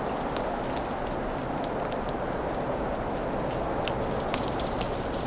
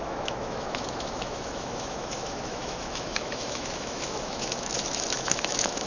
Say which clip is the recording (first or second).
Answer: first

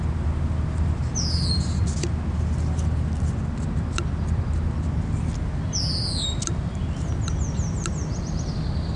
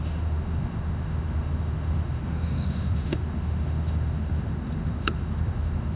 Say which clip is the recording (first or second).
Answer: first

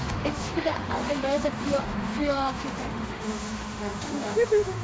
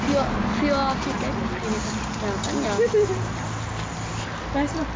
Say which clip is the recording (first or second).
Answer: second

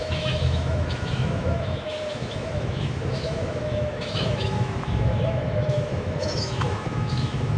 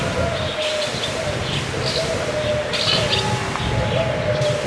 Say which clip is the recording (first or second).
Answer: second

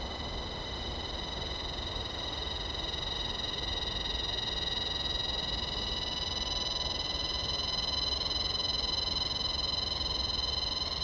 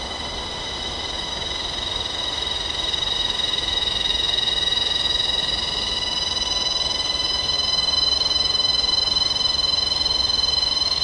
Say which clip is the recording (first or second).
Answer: first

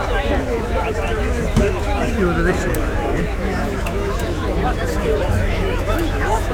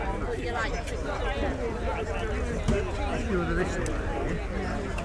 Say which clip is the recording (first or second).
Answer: second